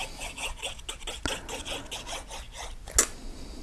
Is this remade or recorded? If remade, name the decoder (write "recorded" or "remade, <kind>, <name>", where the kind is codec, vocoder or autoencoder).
recorded